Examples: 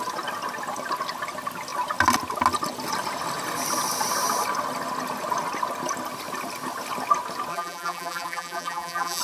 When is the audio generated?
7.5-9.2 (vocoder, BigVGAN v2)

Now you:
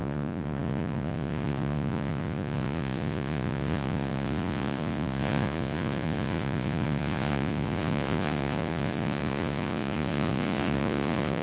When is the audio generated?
0.0-11.4 (vocoder, Vocos)